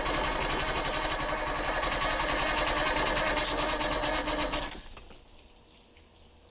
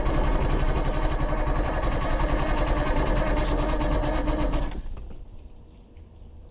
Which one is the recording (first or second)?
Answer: first